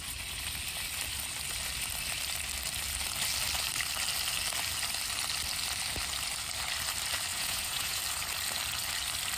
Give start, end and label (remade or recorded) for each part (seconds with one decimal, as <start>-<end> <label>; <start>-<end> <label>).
0.0-7.3 recorded; 7.3-8.0 remade; 8.0-9.4 recorded